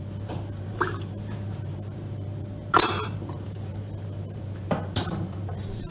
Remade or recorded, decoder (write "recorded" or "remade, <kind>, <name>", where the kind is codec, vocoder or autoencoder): remade, vocoder, BigVGAN v2